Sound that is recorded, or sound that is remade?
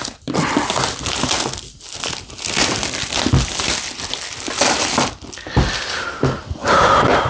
recorded